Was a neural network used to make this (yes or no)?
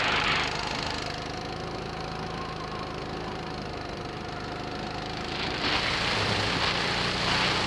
no